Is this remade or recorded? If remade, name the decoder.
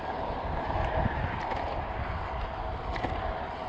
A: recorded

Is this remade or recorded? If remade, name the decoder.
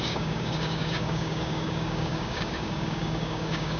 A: remade, codec, DAC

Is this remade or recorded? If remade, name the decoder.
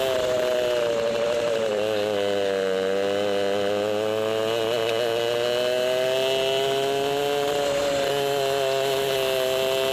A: recorded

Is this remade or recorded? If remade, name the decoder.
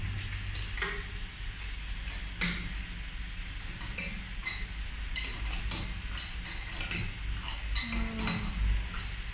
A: recorded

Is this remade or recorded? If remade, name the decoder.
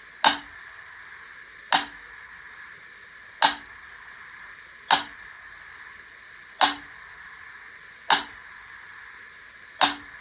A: recorded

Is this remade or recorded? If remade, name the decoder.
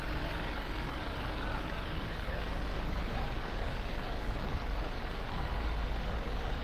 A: remade, codec, DAC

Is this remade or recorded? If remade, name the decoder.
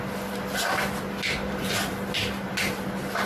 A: recorded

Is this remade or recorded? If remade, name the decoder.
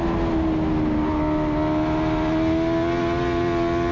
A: recorded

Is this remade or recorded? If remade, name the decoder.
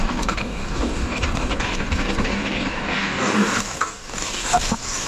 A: remade, codec, DAC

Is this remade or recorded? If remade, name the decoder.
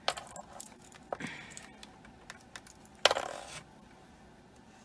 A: recorded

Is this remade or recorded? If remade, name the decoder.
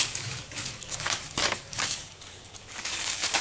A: remade, codec, DAC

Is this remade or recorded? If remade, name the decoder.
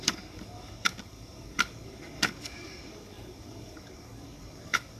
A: remade, codec, DAC